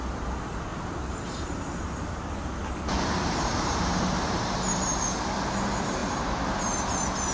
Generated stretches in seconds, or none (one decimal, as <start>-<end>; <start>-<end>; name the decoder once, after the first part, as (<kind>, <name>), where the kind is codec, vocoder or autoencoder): 0.7-5.1 (vocoder, BigVGAN v2); 6.0-6.6